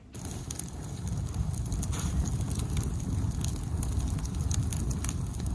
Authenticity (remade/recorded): recorded